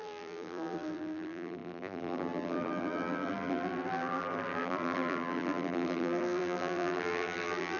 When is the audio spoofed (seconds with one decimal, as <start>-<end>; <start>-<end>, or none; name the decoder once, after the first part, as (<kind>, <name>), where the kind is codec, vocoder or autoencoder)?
0.0-7.8 (vocoder, BigVGAN v2)